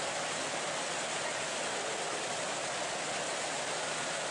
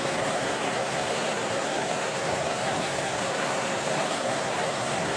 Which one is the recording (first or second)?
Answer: first